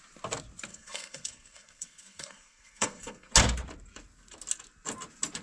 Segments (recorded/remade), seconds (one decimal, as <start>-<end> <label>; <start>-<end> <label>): 0.0-0.7 recorded; 0.7-3.3 remade; 3.3-5.4 recorded

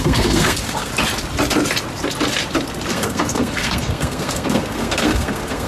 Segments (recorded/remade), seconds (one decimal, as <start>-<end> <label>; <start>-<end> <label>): 0.0-0.9 remade; 0.9-2.9 recorded; 2.9-5.7 remade

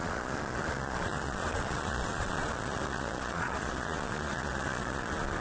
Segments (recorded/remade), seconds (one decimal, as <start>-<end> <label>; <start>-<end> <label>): 0.0-5.4 remade

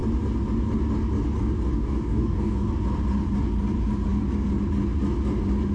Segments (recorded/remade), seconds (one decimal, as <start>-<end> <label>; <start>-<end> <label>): 0.0-1.7 recorded; 1.7-2.7 remade; 2.7-5.7 recorded